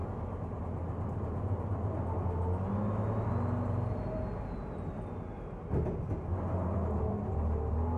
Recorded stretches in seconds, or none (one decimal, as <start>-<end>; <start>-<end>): 0.0-8.0